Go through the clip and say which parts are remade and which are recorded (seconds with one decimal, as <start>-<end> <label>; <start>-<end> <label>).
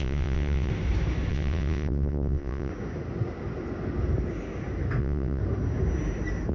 0.0-0.7 remade; 0.7-1.3 recorded; 1.3-2.7 remade; 2.7-5.0 recorded; 5.0-5.4 remade; 5.4-6.5 recorded